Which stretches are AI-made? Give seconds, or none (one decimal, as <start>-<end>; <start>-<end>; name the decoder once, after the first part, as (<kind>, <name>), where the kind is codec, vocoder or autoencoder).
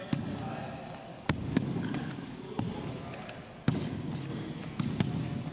1.1-2.9 (codec, DAC)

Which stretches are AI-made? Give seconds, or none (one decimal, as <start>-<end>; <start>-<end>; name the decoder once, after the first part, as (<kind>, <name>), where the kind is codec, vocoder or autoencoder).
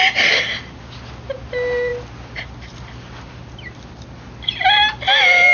none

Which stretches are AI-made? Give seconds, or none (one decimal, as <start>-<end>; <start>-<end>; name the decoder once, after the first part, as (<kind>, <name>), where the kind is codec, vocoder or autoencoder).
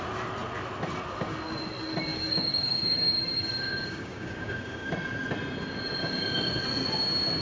2.1-4.9 (codec, DAC); 6.0-6.6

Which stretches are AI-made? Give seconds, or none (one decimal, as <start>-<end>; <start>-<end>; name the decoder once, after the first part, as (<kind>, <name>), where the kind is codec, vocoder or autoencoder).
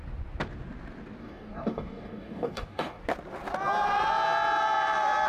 1.2-3.0 (codec, DAC)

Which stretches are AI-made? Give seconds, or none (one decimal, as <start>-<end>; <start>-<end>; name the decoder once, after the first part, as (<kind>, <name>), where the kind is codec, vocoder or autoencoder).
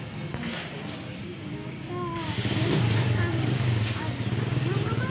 0.0-5.1 (codec, DAC)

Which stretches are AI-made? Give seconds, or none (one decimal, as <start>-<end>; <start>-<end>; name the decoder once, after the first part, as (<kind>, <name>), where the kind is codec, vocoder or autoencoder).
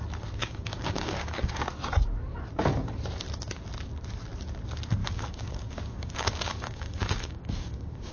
0.4-1.6 (codec, DAC); 5.0-8.1